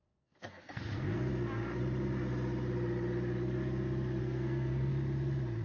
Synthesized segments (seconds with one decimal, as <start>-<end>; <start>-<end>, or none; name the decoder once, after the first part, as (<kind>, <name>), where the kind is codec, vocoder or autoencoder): 0.0-1.3 (codec, SNAC); 4.2-4.9